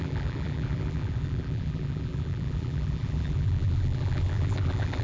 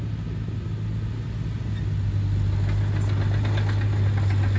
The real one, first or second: second